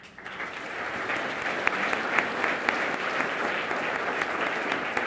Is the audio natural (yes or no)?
yes